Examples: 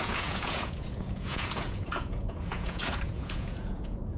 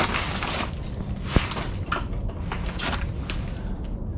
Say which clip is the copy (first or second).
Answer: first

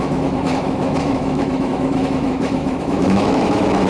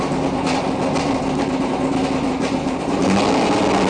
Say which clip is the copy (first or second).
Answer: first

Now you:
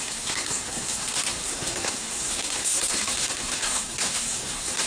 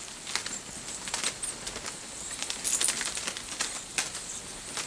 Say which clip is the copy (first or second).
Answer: first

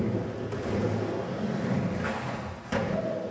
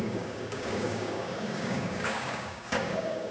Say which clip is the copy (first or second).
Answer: second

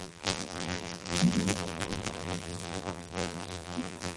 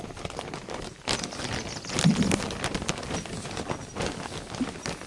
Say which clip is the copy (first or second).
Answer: first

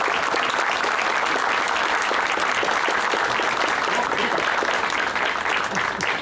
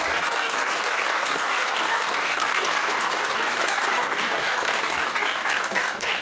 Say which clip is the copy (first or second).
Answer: second